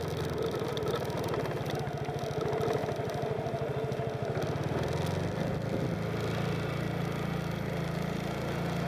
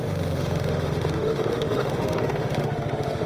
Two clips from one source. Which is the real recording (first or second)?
first